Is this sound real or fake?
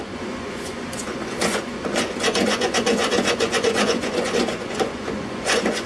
fake